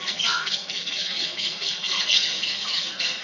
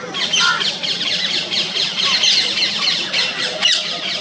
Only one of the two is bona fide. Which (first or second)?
second